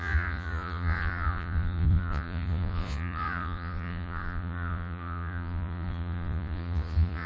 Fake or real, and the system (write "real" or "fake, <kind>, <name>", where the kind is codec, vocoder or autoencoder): fake, vocoder, Vocos